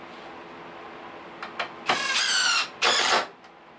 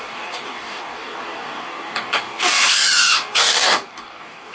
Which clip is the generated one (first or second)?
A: second